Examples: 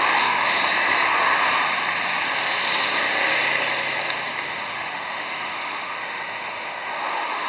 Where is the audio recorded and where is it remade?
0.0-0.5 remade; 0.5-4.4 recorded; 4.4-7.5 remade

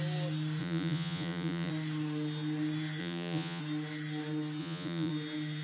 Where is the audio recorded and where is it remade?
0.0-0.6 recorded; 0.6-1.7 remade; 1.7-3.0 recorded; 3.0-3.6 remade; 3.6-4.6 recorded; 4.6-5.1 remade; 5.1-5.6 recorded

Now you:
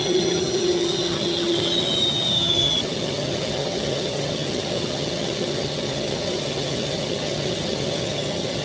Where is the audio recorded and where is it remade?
0.0-8.6 remade